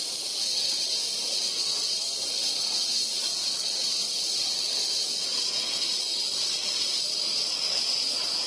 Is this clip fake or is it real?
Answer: real